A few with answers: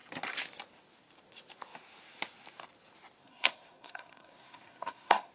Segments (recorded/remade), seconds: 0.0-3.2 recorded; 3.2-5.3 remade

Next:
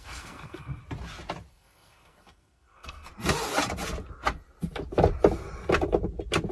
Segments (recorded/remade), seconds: 0.0-0.8 remade; 0.8-1.5 recorded; 1.5-3.1 remade; 3.1-6.5 recorded

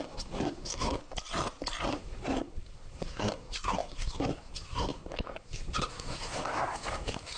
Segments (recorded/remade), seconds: 0.0-1.0 remade; 1.0-1.9 recorded; 1.9-7.4 remade